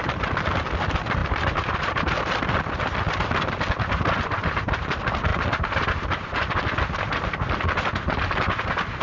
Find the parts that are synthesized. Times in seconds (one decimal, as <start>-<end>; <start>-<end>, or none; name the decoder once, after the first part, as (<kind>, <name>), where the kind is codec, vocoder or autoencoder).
0.0-9.0 (vocoder, BigVGAN v2)